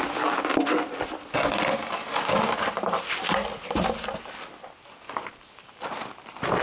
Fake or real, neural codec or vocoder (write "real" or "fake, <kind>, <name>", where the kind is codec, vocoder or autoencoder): real